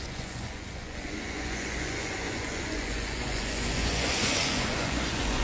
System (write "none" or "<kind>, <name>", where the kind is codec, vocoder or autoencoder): vocoder, Vocos